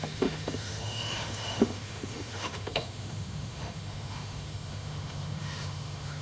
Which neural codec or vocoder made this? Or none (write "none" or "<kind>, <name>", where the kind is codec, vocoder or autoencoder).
autoencoder, DAC-VAE